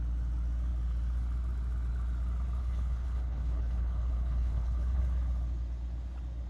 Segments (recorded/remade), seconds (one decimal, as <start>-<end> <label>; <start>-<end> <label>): 0.0-2.6 recorded; 2.6-5.0 remade; 5.0-6.5 recorded

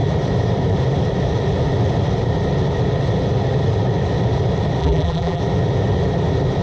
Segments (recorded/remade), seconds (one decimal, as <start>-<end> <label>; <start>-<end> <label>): 0.0-4.8 recorded; 4.8-5.4 remade; 5.4-6.6 recorded

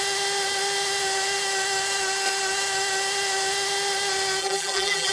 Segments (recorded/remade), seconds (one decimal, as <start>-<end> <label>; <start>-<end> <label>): 0.0-4.4 recorded; 4.4-5.1 remade

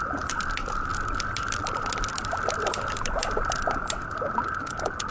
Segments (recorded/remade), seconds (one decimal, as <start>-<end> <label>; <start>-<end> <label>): 0.0-0.9 remade; 0.9-1.6 recorded; 1.6-3.2 remade; 3.2-3.7 recorded; 3.7-5.1 remade

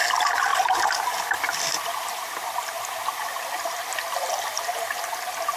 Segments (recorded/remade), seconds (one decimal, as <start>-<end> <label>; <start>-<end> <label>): 0.0-5.6 recorded

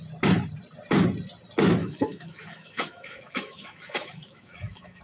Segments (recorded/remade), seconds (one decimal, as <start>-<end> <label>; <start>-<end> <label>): 0.0-1.8 recorded; 1.8-5.0 remade